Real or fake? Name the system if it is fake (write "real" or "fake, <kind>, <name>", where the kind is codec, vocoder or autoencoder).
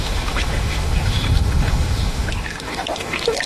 fake, autoencoder, DAC-VAE